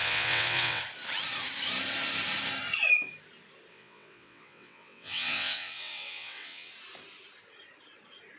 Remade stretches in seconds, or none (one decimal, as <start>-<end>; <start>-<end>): 0.0-0.8; 3.7-6.7